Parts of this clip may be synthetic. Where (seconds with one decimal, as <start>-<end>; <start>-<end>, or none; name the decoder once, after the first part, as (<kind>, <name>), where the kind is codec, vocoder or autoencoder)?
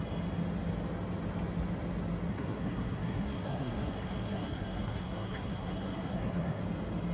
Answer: 2.3-6.6 (codec, SNAC)